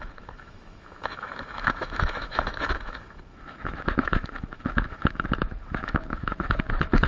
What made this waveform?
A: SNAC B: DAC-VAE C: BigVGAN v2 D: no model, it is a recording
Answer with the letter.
B